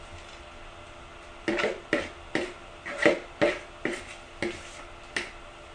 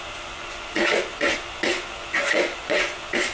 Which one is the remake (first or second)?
second